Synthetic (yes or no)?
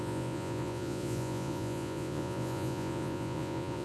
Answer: yes